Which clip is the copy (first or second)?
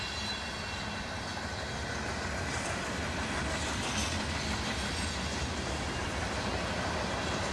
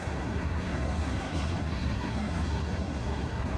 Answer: second